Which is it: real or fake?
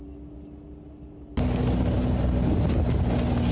real